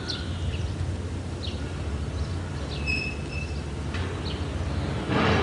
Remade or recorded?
recorded